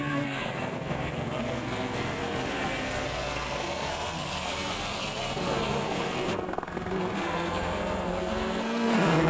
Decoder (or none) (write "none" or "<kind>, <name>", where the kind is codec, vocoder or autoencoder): codec, SNAC